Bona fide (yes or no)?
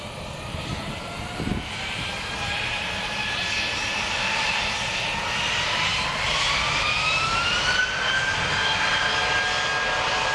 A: yes